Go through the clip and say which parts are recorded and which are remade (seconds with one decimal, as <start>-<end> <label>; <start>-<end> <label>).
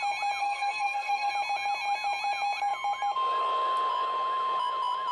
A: 0.0-0.4 recorded; 0.4-1.3 remade; 1.3-5.1 recorded